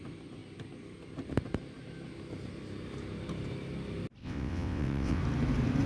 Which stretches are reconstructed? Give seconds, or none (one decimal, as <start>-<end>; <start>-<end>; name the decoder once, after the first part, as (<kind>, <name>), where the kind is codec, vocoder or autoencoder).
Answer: 4.2-5.2 (vocoder, WaveNeXt)